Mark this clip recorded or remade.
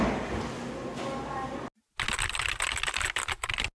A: recorded